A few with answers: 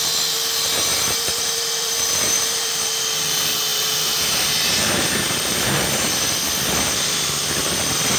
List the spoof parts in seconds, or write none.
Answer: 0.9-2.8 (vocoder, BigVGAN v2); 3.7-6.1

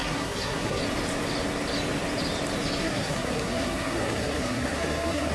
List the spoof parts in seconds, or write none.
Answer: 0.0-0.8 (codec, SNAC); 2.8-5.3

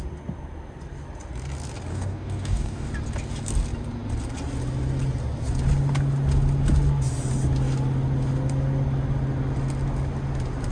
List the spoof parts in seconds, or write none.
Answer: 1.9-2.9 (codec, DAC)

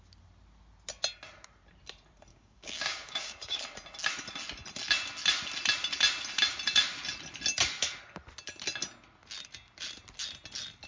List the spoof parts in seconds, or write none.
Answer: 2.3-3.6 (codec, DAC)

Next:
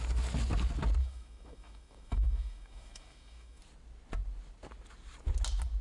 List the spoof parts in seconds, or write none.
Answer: 1.0-3.6 (autoencoder, DAC-VAE)